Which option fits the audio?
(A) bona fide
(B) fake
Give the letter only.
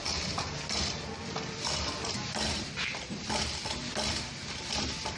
A